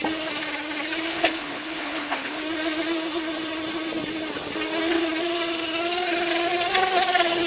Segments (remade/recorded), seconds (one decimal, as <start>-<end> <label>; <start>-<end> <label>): 0.0-1.1 recorded; 1.1-2.4 remade; 2.4-7.5 recorded